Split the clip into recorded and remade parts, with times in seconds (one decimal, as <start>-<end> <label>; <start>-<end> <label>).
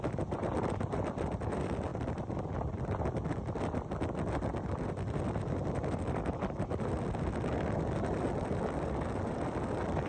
0.0-1.9 recorded; 1.9-3.3 remade; 3.3-10.1 recorded